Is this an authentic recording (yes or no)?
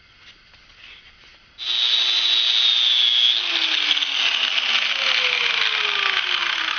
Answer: yes